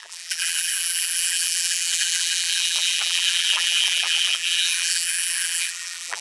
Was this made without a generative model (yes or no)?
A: no